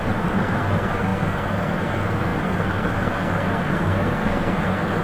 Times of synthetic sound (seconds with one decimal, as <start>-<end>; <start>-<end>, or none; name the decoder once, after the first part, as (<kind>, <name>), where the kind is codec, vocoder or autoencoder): 0.0-5.0 (codec, SNAC)

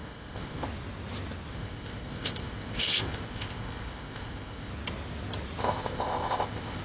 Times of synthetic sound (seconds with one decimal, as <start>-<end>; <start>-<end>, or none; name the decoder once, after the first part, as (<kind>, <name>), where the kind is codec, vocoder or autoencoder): 0.0-0.6 (codec, ZipCodec); 1.5-4.7; 5.6-6.8

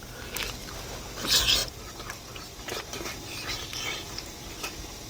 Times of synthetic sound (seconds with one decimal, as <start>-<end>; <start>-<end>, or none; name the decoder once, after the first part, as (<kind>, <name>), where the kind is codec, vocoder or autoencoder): none

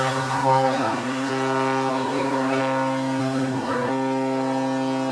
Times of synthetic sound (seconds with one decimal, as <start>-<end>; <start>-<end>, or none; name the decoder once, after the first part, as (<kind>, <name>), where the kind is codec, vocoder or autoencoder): 0.0-1.3 (codec, SNAC); 1.9-2.6; 3.2-3.9

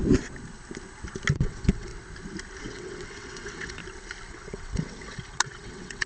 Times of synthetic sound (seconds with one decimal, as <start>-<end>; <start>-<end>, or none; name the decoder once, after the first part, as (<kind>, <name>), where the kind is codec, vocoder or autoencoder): 1.3-1.9 (vocoder, WaveNeXt); 2.6-3.8; 4.3-6.1

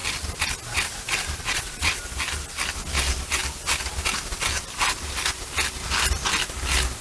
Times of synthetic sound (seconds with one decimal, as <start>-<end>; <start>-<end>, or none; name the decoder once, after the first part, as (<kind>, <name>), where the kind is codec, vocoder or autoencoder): 1.4-2.0 (vocoder, Vocos)